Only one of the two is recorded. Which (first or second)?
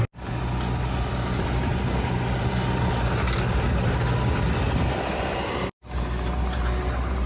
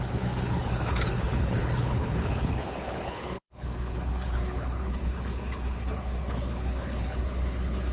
first